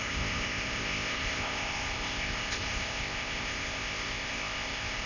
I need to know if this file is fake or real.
fake